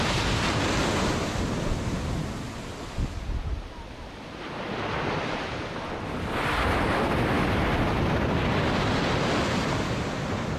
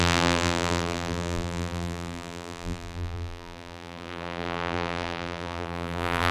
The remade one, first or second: second